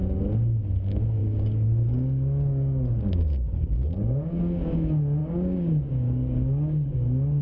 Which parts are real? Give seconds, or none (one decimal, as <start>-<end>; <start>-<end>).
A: 0.0-1.2; 4.4-5.2